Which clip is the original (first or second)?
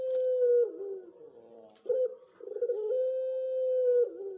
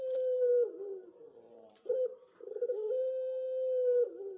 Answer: first